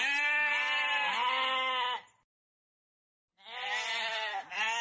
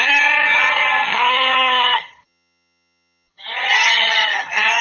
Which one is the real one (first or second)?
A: first